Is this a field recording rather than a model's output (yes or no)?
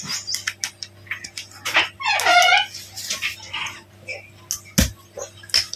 yes